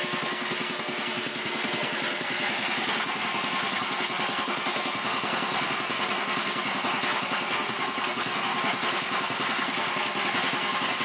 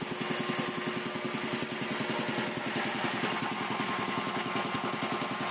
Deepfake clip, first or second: first